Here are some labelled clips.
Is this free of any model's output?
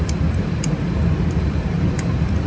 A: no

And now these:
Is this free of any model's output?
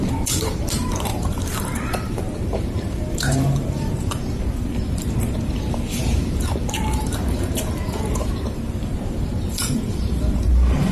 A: no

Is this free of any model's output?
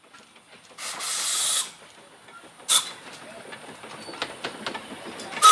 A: yes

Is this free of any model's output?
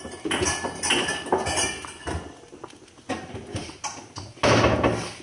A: yes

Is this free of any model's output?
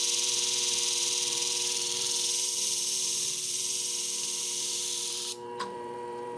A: no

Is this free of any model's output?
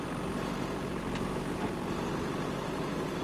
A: yes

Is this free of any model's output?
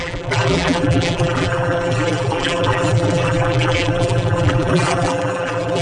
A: no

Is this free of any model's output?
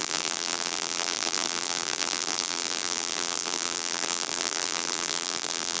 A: no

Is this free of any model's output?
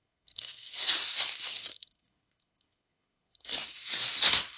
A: no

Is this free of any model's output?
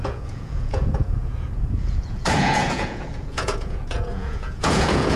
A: no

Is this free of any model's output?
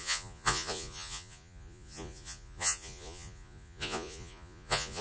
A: no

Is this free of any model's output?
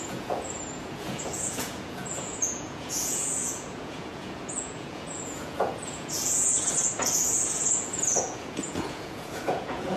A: no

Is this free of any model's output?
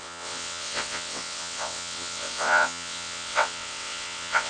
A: no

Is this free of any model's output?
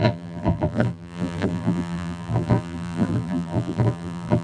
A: no